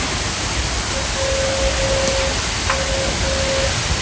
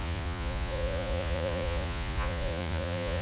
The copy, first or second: second